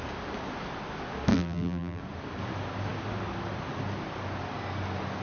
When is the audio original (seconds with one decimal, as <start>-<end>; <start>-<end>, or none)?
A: 0.0-1.3; 2.0-5.2